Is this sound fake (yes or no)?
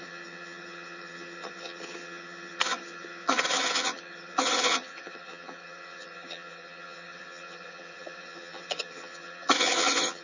yes